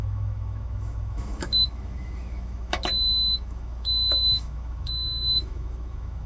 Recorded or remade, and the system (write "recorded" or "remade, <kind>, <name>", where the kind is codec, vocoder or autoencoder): remade, autoencoder, DAC-VAE